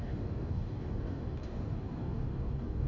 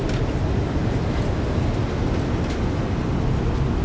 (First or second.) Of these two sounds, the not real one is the first